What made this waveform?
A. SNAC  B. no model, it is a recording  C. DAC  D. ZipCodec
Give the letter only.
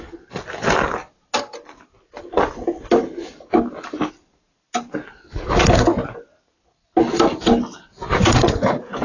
B